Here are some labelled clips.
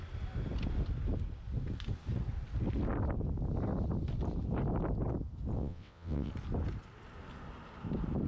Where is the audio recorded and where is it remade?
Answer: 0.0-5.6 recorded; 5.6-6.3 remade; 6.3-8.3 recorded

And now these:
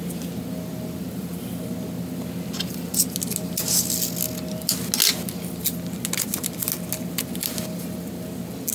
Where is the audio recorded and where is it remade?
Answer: 0.0-8.7 recorded

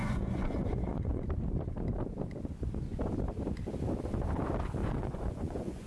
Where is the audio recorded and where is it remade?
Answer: 0.0-1.2 remade; 1.2-4.8 recorded; 4.8-5.9 remade

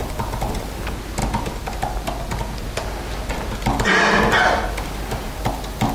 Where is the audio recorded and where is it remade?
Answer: 0.0-5.9 recorded

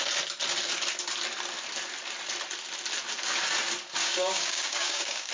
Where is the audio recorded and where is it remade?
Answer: 0.0-4.0 recorded; 4.0-5.3 remade

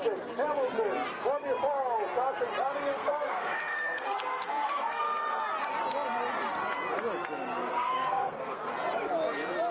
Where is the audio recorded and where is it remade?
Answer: 0.0-2.9 recorded; 2.9-5.4 remade; 5.4-7.6 recorded; 7.6-8.7 remade; 8.7-9.7 recorded

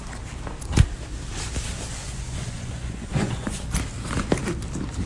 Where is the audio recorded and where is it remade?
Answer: 0.0-2.0 recorded; 2.0-3.6 remade; 3.6-5.1 recorded

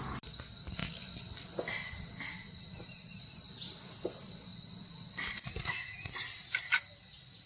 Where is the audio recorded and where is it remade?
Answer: 0.0-7.5 recorded